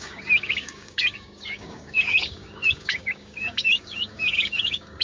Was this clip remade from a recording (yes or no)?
yes